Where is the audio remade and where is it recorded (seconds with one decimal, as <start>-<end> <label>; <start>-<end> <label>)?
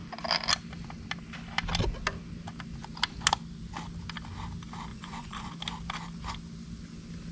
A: 0.0-4.9 recorded; 4.9-5.5 remade; 5.5-7.3 recorded